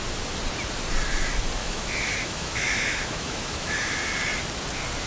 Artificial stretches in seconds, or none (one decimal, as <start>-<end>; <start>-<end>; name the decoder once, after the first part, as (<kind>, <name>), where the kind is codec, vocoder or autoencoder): 1.6-3.9 (autoencoder, DAC-VAE)